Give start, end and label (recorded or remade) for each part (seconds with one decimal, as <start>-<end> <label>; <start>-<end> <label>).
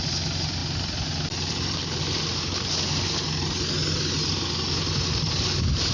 0.0-5.9 recorded